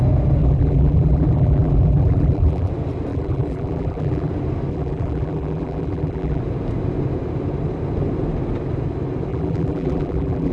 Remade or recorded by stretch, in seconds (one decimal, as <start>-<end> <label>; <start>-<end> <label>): 0.0-0.4 recorded; 0.4-2.7 remade; 2.7-3.1 recorded; 3.1-4.3 remade; 4.3-4.7 recorded; 4.7-6.4 remade; 6.4-9.3 recorded; 9.3-10.5 remade